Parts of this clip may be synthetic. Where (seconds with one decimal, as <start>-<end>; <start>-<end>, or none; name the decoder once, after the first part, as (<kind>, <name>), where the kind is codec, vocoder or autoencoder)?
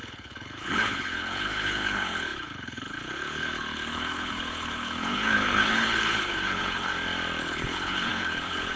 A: 0.0-6.9 (codec, HILCodec); 7.4-8.8